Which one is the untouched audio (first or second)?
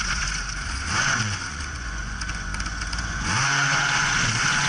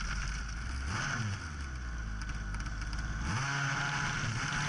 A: second